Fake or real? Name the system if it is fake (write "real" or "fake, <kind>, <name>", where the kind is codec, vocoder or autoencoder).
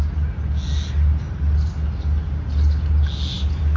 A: real